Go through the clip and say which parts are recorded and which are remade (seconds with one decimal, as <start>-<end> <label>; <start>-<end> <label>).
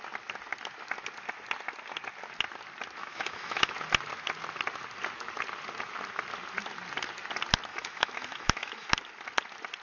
0.0-3.0 recorded; 3.0-3.7 remade; 3.7-7.7 recorded; 7.7-8.9 remade; 8.9-9.8 recorded